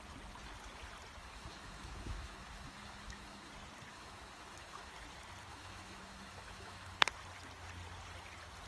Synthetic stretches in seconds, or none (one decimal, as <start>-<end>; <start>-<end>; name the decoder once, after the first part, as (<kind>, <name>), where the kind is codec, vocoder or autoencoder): 1.2-3.5 (autoencoder, DAC-VAE); 3.9-4.9; 5.5-7.0